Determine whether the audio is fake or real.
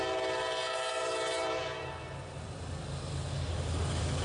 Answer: real